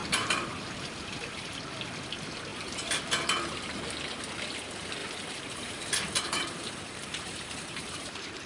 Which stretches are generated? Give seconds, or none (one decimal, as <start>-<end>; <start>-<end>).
0.0-1.6; 2.5-3.0; 5.0-8.5